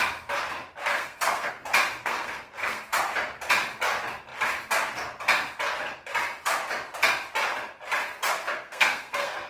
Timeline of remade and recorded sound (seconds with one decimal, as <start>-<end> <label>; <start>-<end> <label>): 0.0-0.9 recorded; 0.9-1.5 remade; 1.5-2.0 recorded; 2.0-2.8 remade; 2.8-8.3 recorded; 8.3-9.5 remade